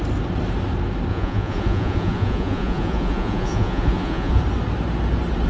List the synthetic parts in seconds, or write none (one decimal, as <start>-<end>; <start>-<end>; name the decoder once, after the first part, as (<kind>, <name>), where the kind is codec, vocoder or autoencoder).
1.1-4.4 (vocoder, Vocos)